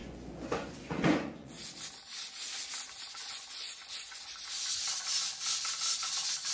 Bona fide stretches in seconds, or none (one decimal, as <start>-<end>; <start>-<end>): 1.5-3.2; 4.3-6.5